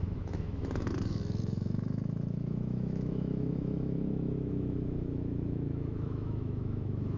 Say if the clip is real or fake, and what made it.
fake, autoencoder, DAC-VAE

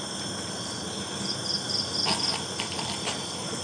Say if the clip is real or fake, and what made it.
real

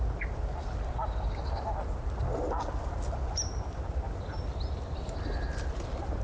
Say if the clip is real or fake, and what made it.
real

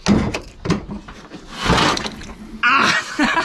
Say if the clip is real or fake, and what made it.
real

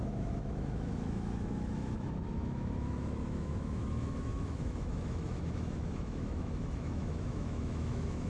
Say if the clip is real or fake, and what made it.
fake, autoencoder, DAC-VAE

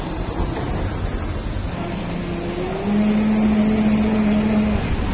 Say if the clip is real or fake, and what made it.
real